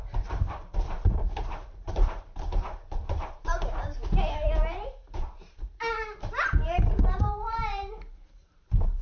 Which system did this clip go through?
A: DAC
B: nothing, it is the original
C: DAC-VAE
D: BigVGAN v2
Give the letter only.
D